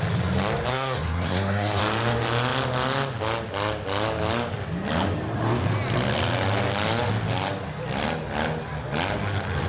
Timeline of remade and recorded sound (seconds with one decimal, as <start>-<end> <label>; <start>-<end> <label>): 0.0-0.7 recorded; 0.7-1.8 remade; 1.8-9.7 recorded